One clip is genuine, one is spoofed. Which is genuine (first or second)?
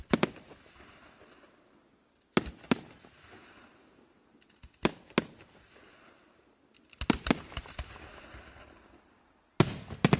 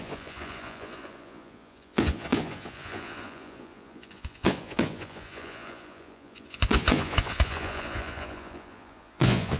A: first